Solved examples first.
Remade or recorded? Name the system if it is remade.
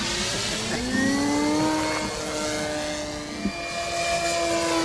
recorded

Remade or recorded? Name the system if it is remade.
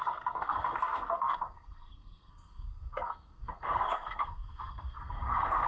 remade, codec, SNAC